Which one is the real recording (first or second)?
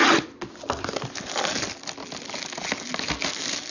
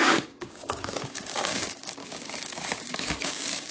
first